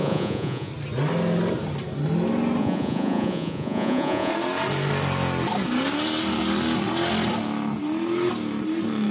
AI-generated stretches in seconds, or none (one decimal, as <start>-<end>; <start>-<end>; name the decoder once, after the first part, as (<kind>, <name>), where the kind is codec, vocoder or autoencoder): 0.0-0.7 (vocoder, Vocos); 2.6-4.3